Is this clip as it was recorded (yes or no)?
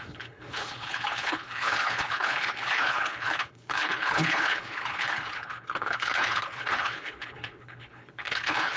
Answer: no